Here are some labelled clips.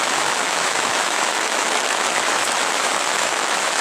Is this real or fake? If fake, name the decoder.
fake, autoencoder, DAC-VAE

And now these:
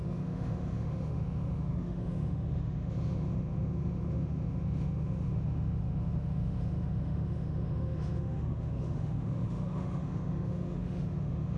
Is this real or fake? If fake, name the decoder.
fake, autoencoder, DAC-VAE